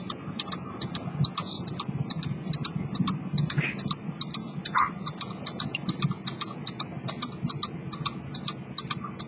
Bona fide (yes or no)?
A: yes